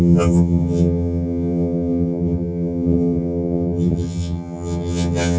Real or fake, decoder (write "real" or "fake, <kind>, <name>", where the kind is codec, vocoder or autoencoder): fake, vocoder, HiFi-GAN